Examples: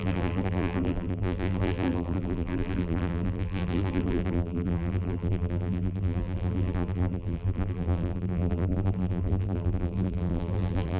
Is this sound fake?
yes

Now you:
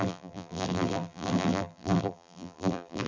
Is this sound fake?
yes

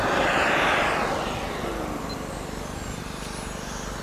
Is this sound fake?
no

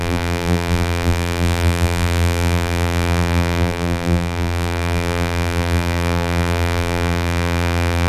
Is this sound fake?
yes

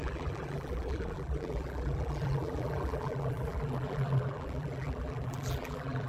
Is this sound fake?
yes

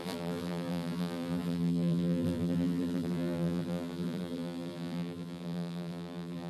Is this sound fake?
yes